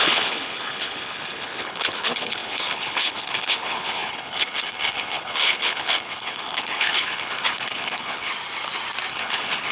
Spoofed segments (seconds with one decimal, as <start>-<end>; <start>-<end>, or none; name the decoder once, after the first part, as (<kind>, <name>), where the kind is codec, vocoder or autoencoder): 0.0-8.3 (codec, HILCodec); 9.1-9.7